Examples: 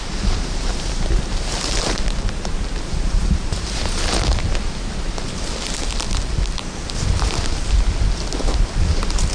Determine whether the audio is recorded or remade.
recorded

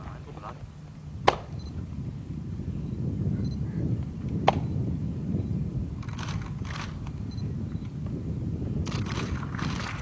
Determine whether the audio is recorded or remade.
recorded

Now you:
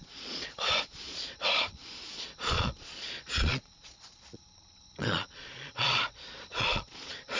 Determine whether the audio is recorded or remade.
remade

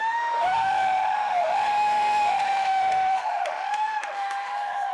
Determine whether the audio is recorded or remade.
remade